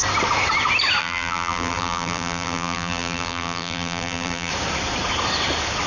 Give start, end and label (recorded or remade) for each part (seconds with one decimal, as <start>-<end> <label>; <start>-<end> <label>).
0.0-1.0 recorded; 1.0-4.5 remade; 4.5-5.9 recorded